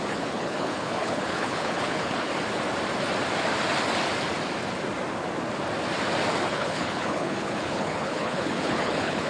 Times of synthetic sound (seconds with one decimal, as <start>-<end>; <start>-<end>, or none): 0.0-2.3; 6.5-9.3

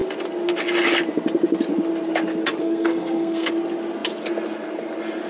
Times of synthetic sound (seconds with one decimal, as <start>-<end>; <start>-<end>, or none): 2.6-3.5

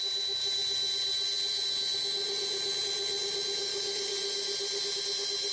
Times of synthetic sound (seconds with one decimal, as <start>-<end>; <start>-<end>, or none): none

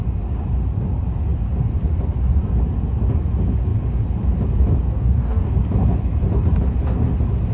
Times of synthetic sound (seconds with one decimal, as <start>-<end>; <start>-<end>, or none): 5.0-5.5